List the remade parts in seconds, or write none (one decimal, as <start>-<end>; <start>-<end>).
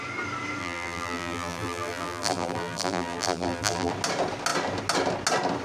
0.6-3.9